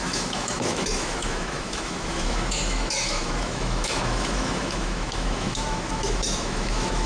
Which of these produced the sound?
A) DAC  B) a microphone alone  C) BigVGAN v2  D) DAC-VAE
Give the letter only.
D